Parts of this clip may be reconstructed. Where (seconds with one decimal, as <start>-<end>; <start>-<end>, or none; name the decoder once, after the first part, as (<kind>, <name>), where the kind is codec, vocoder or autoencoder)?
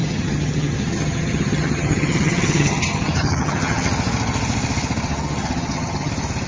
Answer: 0.0-3.9 (vocoder, HiFi-GAN); 5.1-6.1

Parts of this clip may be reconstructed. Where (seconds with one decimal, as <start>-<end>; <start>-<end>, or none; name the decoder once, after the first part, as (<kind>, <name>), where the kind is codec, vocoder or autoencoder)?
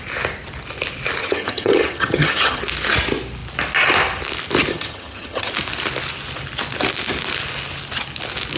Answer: 1.2-2.6 (vocoder, HiFi-GAN); 4.7-5.5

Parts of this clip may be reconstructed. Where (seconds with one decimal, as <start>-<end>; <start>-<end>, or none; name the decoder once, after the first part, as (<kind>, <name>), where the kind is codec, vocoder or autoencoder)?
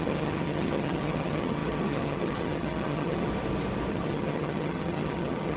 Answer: 0.0-3.3 (vocoder, HiFi-GAN); 3.9-5.6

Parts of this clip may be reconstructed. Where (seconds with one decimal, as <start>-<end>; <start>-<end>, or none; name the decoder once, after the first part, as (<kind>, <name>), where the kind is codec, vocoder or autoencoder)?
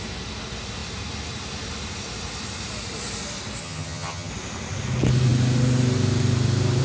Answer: 3.6-4.3 (vocoder, HiFi-GAN)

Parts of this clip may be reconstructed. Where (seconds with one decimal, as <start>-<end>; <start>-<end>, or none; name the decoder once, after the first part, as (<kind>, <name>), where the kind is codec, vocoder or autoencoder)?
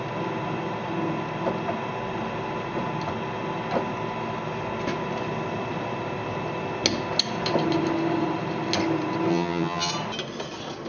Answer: 9.3-9.9 (vocoder, HiFi-GAN)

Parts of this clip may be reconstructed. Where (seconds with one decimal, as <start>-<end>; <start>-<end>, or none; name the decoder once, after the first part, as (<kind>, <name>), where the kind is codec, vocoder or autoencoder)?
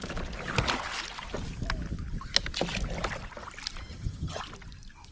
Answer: 3.9-4.4 (vocoder, HiFi-GAN)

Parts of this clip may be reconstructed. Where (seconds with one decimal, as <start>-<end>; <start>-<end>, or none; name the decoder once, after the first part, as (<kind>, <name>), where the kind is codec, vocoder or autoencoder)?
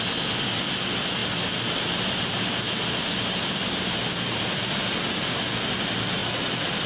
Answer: none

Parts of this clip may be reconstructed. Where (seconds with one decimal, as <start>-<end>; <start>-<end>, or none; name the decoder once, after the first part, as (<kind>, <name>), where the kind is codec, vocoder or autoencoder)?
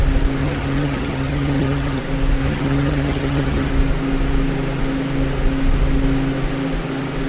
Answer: 0.4-2.0 (vocoder, HiFi-GAN); 2.4-3.7